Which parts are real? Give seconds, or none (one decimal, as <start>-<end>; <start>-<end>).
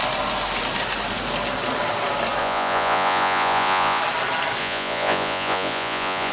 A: 0.0-2.4; 4.0-4.6